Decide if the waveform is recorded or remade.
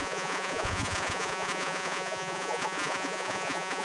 remade